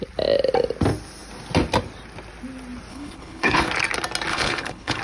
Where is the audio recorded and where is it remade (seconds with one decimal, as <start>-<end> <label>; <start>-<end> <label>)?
0.0-2.9 recorded; 2.9-3.7 remade; 3.7-4.3 recorded; 4.3-5.0 remade